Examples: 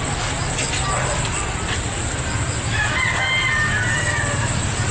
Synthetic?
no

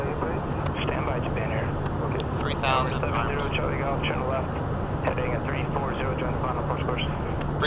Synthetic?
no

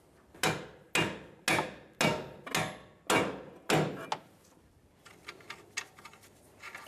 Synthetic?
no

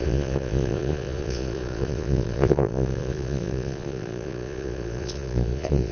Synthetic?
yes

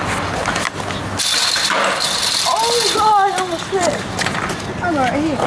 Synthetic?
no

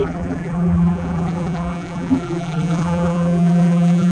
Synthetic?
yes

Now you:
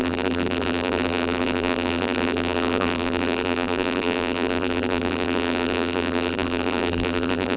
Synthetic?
yes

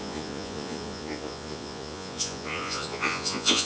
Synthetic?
yes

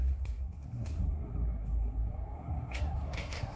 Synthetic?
yes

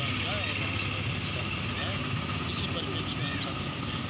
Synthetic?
no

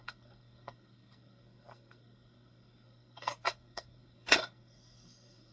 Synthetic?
yes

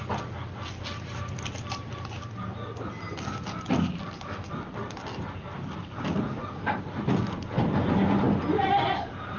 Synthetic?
no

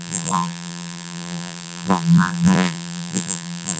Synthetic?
yes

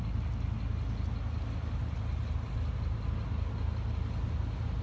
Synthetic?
no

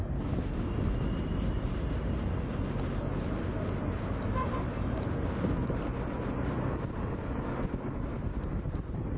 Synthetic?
no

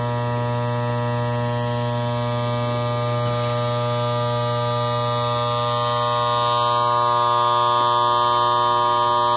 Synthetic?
no